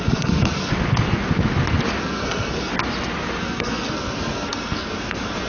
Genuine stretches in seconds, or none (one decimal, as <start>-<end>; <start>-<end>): 0.7-2.0; 2.7-3.4

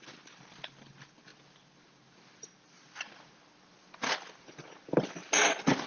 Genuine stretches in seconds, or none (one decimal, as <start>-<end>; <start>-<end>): 0.0-5.9

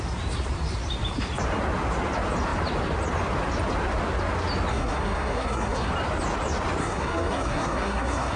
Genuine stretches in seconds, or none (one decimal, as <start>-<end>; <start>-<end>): 0.0-4.7; 5.9-6.8

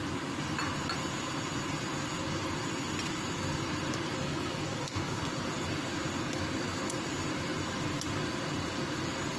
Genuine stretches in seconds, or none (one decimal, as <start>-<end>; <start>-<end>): 0.0-4.2; 5.2-9.4